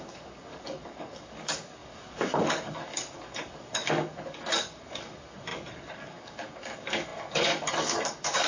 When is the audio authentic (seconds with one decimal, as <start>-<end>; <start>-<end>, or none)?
none